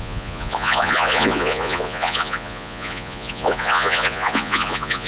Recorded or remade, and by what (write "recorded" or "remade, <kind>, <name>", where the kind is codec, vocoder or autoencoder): remade, vocoder, Vocos